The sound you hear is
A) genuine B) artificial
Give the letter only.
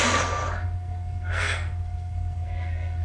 B